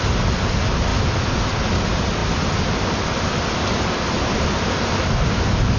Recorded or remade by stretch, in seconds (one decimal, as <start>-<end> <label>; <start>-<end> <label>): 0.0-5.8 recorded